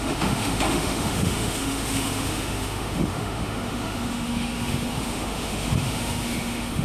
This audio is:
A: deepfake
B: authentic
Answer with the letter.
A